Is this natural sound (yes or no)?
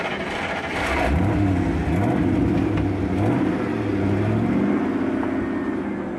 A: yes